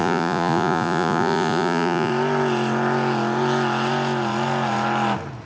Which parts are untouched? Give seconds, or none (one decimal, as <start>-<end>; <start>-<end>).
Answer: 2.1-5.5